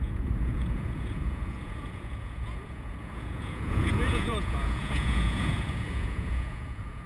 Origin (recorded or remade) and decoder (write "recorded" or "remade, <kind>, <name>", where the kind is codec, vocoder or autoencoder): remade, vocoder, Vocos